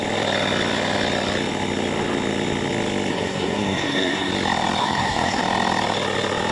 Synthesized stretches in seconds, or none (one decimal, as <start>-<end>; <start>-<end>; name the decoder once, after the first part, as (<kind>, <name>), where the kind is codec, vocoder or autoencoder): 3.1-4.3 (codec, SNAC); 4.8-5.4